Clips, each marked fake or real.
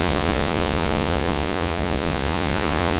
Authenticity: fake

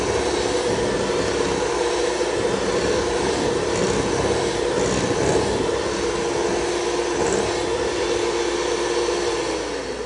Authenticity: real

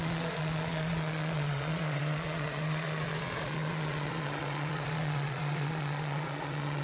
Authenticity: fake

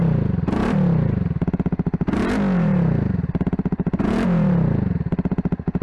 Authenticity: real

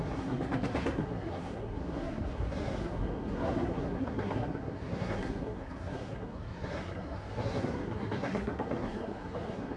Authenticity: fake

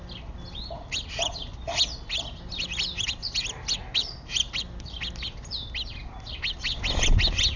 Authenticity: real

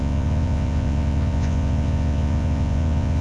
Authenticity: fake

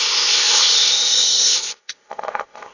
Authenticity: fake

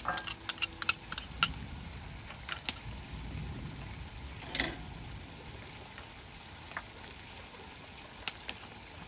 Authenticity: real